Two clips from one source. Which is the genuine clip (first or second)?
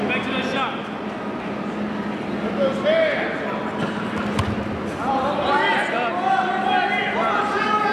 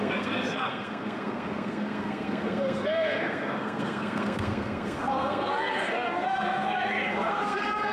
first